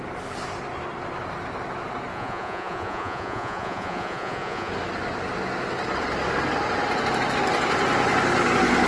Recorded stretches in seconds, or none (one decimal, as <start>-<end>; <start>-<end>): 0.0-2.1; 4.7-8.9